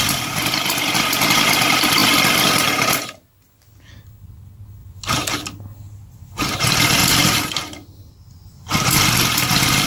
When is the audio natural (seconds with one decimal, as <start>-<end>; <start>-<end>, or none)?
0.0-7.0; 7.5-9.9